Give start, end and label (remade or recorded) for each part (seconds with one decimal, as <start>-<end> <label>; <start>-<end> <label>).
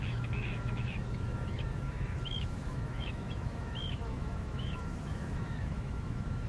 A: 0.0-6.5 remade